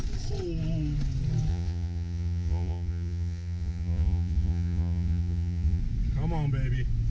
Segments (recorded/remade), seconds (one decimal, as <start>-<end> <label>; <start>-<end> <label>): 0.0-1.5 recorded; 1.5-5.8 remade; 5.8-7.1 recorded